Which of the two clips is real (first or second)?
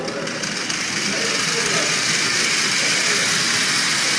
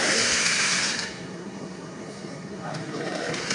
first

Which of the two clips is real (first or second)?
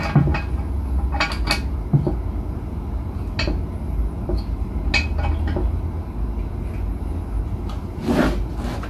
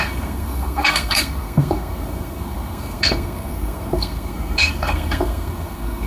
first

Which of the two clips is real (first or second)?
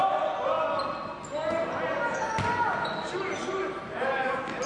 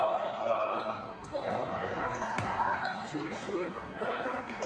first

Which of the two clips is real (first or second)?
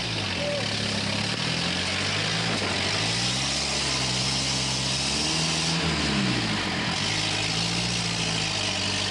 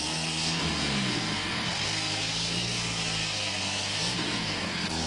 first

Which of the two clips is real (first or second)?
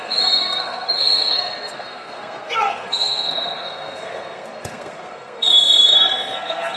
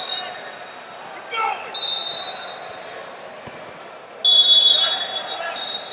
second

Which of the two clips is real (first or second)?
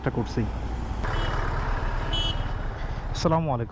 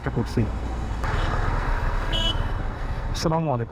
first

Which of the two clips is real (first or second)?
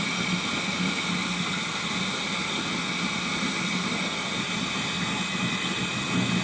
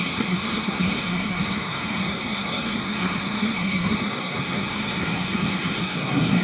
first